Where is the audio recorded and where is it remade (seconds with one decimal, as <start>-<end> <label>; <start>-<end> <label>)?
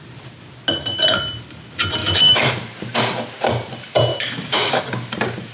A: 0.0-2.0 recorded; 2.0-2.5 remade; 2.5-4.1 recorded; 4.1-4.8 remade; 4.8-5.5 recorded